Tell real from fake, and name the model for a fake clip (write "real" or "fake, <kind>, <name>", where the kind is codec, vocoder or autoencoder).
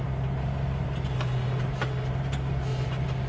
real